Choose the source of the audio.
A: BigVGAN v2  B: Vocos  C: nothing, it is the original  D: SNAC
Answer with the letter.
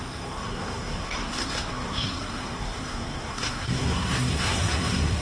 D